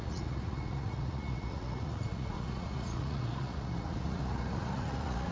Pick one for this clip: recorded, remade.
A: remade